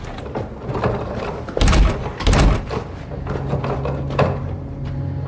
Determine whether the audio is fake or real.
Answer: real